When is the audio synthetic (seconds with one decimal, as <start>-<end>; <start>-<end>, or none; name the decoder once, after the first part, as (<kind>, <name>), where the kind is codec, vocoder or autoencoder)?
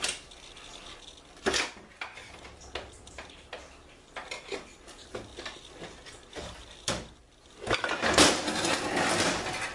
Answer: none